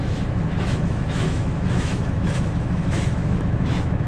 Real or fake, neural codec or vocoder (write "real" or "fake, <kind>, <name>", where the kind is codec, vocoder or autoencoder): fake, autoencoder, DAC-VAE